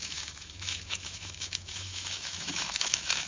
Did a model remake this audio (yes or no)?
yes